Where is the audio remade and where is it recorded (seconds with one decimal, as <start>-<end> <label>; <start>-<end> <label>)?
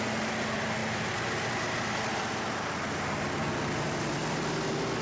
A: 0.0-5.0 recorded